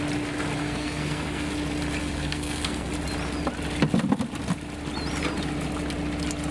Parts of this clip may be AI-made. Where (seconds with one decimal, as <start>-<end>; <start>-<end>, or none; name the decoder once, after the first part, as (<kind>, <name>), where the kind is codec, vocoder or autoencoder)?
0.6-1.5 (codec, SNAC); 2.0-2.9